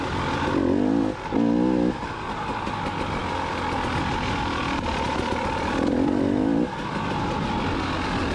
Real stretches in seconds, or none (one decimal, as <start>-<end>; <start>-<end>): 0.0-8.3